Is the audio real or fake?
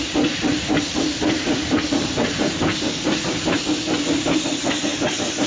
real